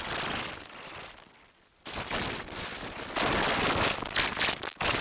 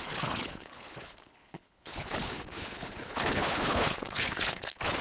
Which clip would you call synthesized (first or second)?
second